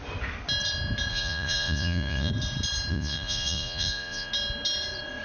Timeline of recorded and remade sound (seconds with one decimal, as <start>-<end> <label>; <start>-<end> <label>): 0.0-1.1 recorded; 1.1-2.3 remade; 2.3-2.9 recorded; 2.9-4.3 remade; 4.3-5.2 recorded